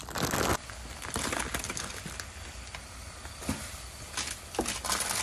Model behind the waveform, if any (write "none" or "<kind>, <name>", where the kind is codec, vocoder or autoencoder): none